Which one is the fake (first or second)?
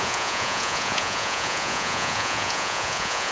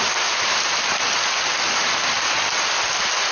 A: first